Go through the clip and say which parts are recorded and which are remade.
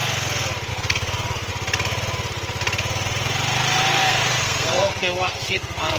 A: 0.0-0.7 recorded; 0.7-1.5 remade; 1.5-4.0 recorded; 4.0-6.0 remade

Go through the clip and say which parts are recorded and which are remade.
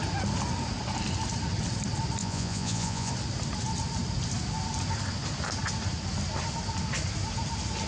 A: 0.0-2.2 recorded; 2.2-3.1 remade; 3.1-7.9 recorded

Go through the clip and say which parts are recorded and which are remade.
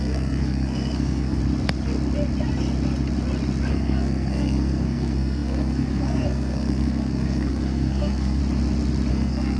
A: 0.0-1.4 remade; 1.4-3.7 recorded; 3.7-8.4 remade; 8.4-9.1 recorded; 9.1-9.6 remade